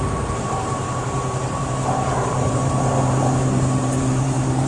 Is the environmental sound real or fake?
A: fake